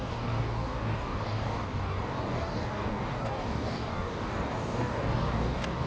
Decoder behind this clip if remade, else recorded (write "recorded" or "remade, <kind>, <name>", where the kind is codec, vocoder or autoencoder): remade, codec, DAC